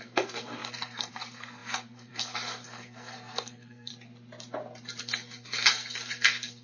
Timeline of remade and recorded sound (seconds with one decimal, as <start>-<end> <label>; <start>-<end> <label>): 0.0-3.9 remade; 3.9-5.0 recorded; 5.0-6.6 remade